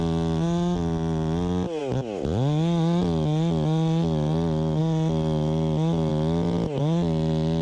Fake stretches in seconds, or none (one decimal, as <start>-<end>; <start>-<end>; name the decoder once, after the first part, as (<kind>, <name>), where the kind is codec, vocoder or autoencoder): none